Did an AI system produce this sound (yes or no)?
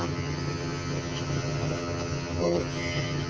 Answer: yes